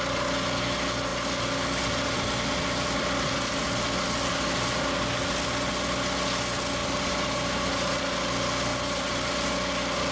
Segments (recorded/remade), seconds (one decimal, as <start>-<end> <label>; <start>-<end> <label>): 0.0-6.8 recorded; 6.8-8.0 remade; 8.0-8.7 recorded; 8.7-9.5 remade; 9.5-10.1 recorded